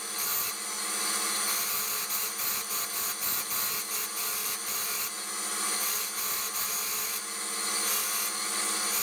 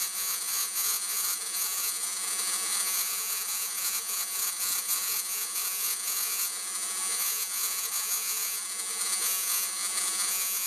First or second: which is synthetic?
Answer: second